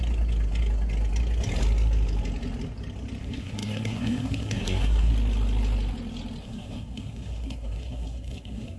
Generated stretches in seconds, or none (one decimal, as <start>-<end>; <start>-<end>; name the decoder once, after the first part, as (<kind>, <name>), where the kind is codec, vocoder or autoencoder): 3.2-5.1 (codec, SNAC); 6.4-8.8